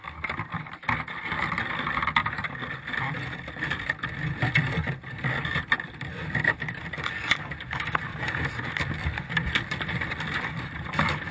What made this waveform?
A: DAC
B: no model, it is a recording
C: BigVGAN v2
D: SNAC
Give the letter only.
B